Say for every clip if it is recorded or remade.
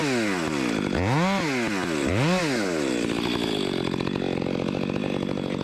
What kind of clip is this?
recorded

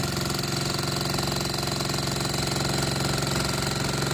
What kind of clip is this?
recorded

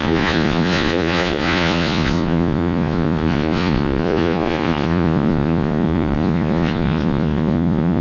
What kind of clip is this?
remade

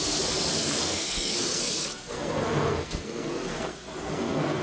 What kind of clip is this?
remade